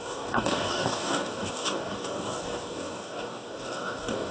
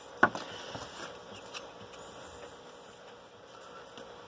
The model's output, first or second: first